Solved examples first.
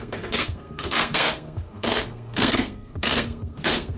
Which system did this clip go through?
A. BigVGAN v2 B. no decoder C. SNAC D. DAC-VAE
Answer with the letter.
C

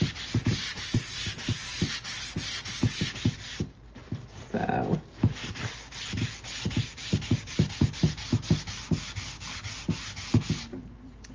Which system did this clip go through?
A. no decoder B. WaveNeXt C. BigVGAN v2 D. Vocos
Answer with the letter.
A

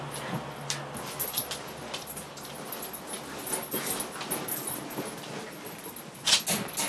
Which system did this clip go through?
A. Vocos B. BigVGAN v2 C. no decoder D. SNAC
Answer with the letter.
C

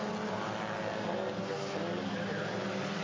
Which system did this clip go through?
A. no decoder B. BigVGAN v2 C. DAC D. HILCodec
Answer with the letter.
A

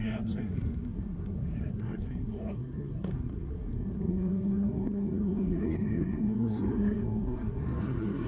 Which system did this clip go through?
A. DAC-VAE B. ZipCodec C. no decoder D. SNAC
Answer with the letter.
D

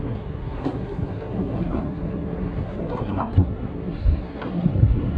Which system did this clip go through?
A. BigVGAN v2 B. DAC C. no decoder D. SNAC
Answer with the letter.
D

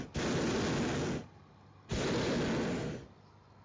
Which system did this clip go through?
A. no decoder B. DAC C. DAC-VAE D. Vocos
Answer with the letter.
A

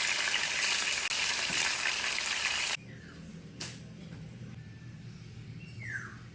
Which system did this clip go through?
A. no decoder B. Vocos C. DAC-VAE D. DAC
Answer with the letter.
A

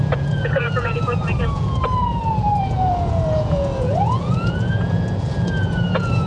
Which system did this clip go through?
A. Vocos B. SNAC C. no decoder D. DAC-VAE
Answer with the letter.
A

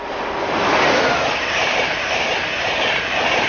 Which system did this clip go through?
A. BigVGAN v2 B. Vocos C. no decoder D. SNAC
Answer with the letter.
C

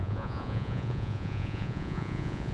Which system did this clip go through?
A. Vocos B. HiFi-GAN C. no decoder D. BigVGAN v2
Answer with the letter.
A